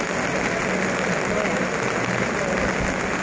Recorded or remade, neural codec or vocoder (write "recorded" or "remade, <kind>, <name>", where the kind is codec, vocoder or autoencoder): recorded